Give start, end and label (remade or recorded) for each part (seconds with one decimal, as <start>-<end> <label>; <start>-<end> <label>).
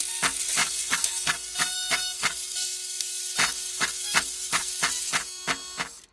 0.0-0.6 recorded; 0.6-3.2 remade; 3.2-3.7 recorded; 3.7-4.7 remade; 4.7-6.1 recorded